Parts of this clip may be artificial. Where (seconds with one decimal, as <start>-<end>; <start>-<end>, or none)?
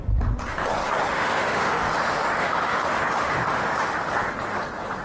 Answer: 1.1-4.1